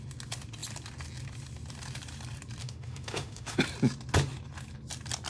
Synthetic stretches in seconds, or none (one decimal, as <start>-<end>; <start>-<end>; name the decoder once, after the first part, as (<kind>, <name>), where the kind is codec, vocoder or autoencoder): 2.6-3.6 (autoencoder, DAC-VAE)